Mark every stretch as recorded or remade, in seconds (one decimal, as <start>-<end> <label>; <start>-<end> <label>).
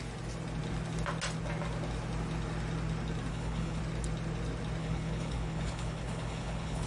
0.0-3.3 recorded; 3.3-3.8 remade; 3.8-4.8 recorded; 4.8-6.9 remade